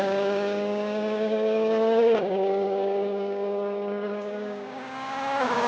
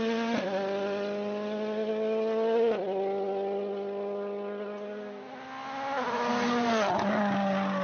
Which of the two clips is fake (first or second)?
first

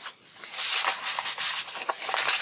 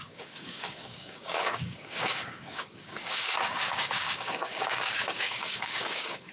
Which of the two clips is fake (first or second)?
second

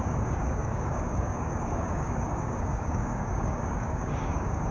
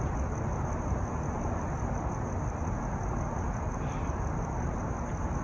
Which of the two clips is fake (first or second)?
first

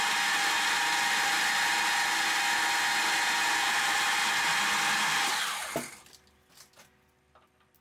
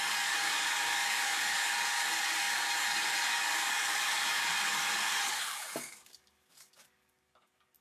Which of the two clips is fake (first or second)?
second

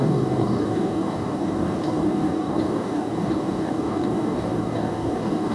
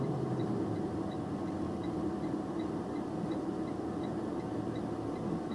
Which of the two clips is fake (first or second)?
first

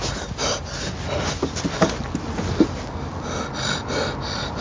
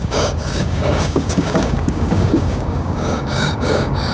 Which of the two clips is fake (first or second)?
second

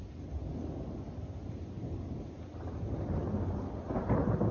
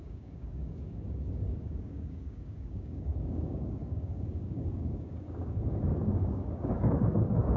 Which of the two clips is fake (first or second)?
second